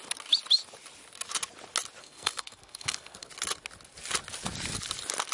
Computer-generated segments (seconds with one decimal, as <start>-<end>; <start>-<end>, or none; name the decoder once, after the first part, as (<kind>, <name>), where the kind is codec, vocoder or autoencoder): 2.0-3.3 (codec, SNAC)